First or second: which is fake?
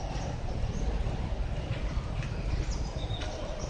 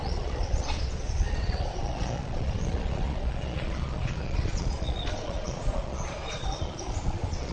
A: second